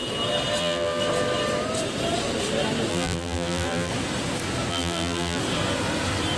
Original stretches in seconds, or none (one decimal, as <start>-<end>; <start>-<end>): 0.0-0.6; 1.0-2.9; 3.9-4.7; 5.4-6.4